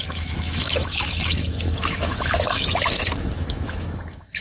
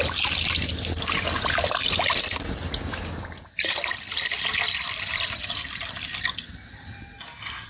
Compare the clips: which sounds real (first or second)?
second